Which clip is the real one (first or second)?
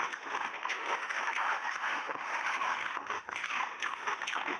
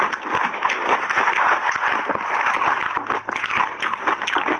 second